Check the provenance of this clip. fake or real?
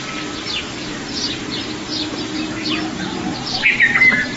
real